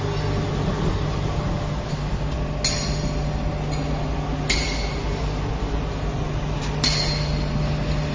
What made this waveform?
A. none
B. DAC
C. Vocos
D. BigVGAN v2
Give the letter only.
A